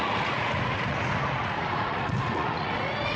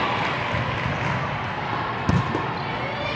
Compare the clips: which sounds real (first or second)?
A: second